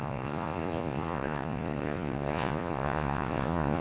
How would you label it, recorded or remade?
remade